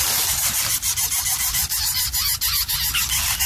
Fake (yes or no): no